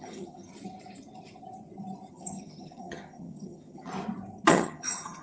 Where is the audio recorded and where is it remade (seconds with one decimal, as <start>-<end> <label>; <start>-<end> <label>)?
0.0-0.5 remade; 0.5-2.1 recorded; 2.1-3.9 remade; 3.9-4.5 recorded; 4.5-5.2 remade